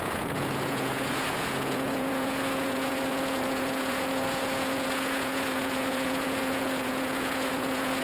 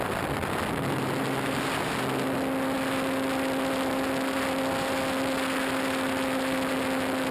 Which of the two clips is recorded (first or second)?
second